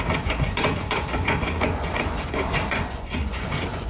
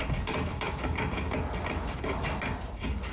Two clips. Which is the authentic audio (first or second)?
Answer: second